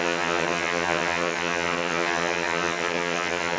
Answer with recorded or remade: remade